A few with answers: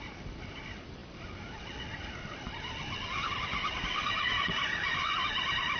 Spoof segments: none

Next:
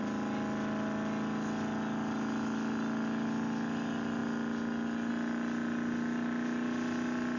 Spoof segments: none

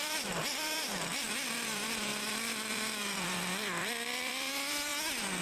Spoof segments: 0.0-4.9 (vocoder, BigVGAN v2)

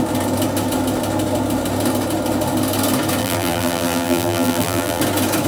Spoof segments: 3.2-5.0 (vocoder, BigVGAN v2)

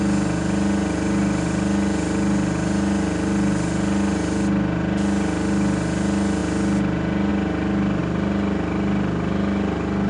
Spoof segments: none